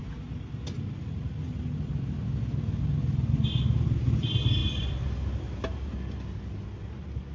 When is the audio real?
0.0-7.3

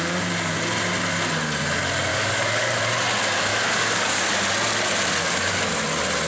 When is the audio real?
0.0-2.1; 2.8-3.5; 4.2-5.2; 5.7-6.3

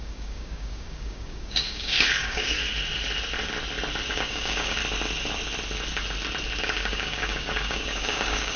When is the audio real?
2.6-4.1; 4.8-6.6

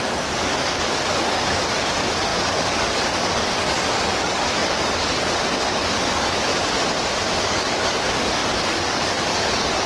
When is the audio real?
6.5-7.4

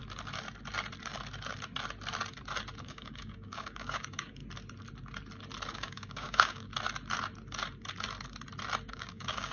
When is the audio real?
0.0-2.8; 4.4-5.7; 6.7-8.9

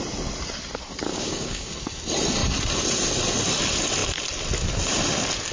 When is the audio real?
0.0-1.1; 1.7-5.5

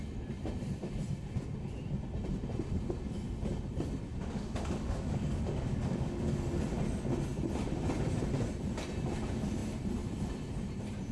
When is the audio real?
0.0-4.1; 6.5-11.1